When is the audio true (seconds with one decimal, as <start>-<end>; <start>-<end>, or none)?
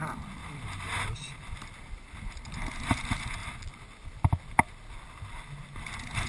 0.0-0.4; 1.9-6.3